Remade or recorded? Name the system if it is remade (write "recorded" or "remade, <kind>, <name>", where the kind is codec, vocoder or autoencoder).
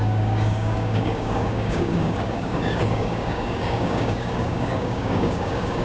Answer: remade, codec, DAC